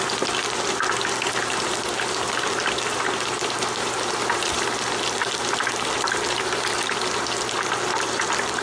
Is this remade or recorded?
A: recorded